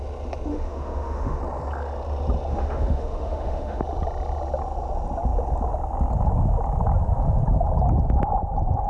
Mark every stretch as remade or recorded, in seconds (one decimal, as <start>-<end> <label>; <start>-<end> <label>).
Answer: 0.0-0.5 recorded; 0.5-1.4 remade; 1.4-2.5 recorded; 2.5-3.8 remade; 3.8-8.9 recorded